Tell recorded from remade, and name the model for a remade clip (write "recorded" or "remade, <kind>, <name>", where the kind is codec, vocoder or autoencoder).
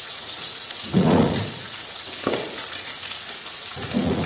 remade, vocoder, Vocos